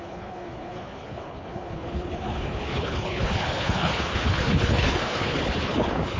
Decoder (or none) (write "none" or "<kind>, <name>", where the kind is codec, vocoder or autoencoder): codec, HILCodec